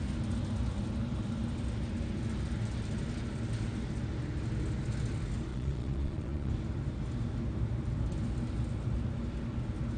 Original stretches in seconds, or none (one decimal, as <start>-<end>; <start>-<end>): 0.0-5.5; 6.5-10.0